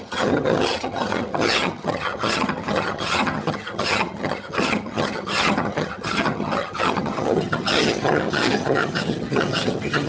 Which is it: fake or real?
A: fake